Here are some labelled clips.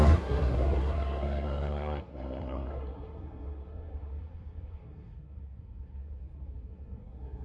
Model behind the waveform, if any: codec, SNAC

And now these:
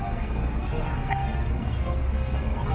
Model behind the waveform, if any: codec, SNAC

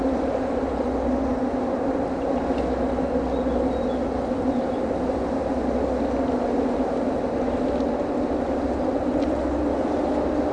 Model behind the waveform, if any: none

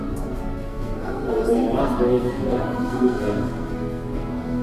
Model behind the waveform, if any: codec, SNAC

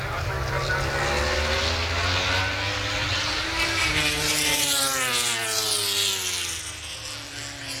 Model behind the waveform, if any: none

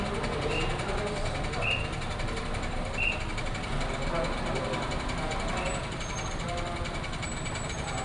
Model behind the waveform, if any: none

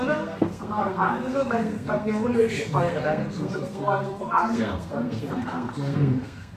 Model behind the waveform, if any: codec, SNAC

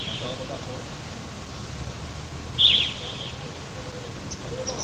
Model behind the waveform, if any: none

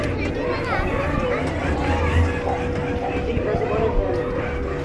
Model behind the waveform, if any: none